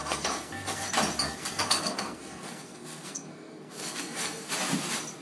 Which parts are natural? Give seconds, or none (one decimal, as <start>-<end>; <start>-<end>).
0.9-1.4; 4.5-5.2